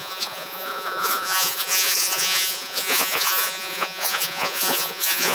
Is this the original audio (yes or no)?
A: no